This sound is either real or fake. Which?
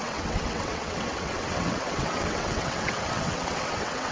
fake